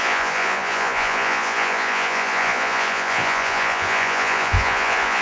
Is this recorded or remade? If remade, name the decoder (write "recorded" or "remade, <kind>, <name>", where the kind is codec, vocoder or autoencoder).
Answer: remade, vocoder, Vocos